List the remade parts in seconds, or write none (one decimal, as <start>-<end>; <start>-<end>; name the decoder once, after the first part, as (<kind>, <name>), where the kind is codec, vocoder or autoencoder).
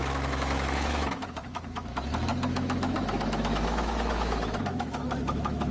0.0-5.7 (autoencoder, DAC-VAE)